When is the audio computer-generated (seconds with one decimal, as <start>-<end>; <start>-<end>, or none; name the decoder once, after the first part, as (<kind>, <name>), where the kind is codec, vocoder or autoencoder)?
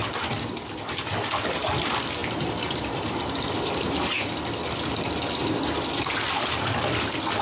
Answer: 2.2-4.4 (vocoder, BigVGAN v2)